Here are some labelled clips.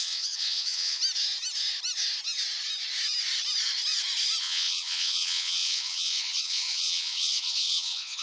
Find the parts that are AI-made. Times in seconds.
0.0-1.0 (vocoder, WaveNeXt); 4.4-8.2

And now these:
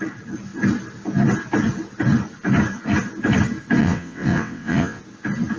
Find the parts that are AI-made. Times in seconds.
3.8-5.0 (vocoder, WaveNeXt)